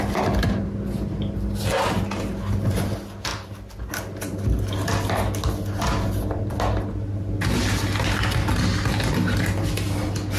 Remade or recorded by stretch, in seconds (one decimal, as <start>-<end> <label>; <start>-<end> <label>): 0.0-10.4 recorded

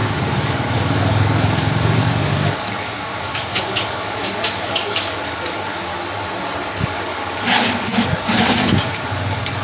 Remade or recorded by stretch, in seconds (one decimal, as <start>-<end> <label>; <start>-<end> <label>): 0.0-5.9 remade; 5.9-6.6 recorded; 6.6-9.6 remade

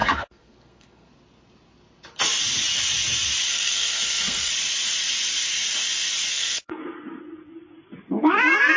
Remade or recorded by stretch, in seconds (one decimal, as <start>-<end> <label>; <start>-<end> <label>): 0.0-1.1 remade; 1.1-3.5 recorded; 3.5-4.5 remade; 4.5-6.3 recorded; 6.3-6.8 remade; 6.8-8.8 recorded